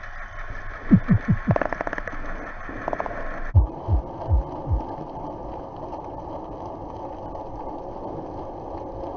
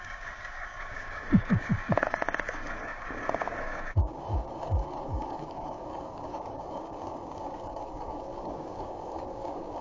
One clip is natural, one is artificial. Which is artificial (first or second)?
second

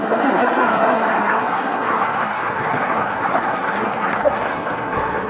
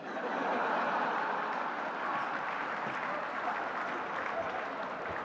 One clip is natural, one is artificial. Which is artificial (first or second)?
first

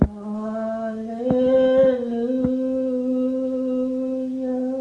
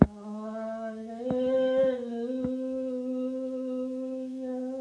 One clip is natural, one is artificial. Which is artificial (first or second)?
second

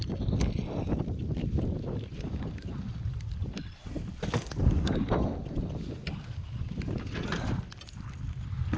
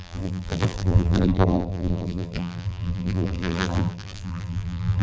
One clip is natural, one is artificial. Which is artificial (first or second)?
second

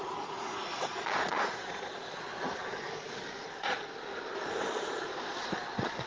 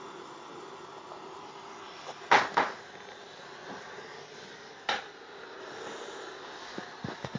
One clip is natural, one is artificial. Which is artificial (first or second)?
first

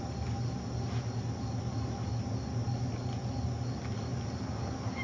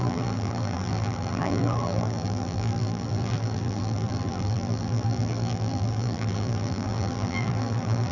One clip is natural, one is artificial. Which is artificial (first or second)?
second